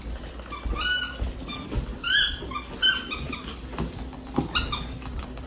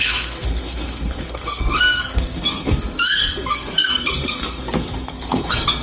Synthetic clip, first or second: second